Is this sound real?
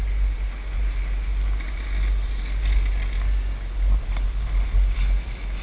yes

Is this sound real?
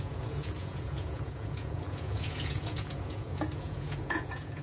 no